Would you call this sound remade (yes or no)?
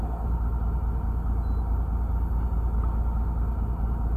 no